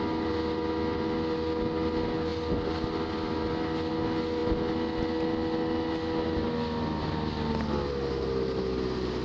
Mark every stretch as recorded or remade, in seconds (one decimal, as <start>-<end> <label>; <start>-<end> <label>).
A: 0.0-9.2 recorded